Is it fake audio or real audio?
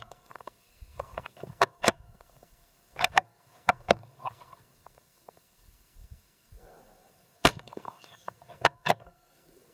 fake